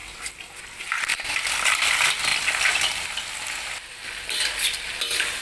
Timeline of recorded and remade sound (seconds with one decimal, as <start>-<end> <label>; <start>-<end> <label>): 0.0-5.4 recorded